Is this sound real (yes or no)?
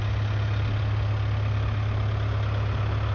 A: yes